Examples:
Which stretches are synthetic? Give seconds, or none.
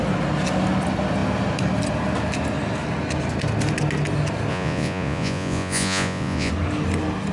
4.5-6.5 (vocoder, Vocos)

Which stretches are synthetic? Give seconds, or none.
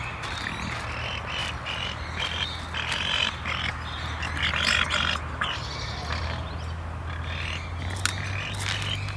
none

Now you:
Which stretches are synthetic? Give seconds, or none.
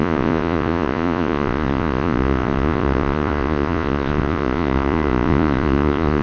0.0-6.2 (vocoder, Vocos)